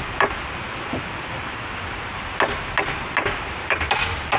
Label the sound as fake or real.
real